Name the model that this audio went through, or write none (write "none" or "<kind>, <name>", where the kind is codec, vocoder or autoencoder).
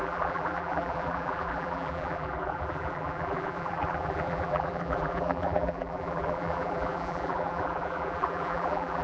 vocoder, BigVGAN v2